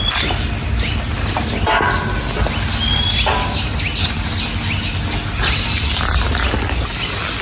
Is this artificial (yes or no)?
no